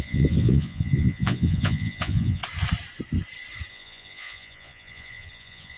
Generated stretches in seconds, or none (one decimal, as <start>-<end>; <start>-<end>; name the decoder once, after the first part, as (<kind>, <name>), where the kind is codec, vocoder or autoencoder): 0.0-2.4 (vocoder, Vocos); 3.7-5.8